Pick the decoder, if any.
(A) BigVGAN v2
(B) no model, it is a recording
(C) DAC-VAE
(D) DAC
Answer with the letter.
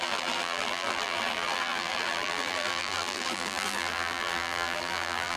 A